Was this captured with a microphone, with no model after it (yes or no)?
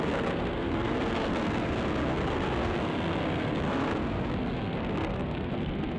no